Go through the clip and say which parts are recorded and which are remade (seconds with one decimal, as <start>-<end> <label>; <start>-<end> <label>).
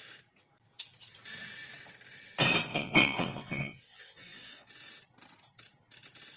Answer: 0.0-2.7 recorded; 2.7-4.7 remade; 4.7-6.4 recorded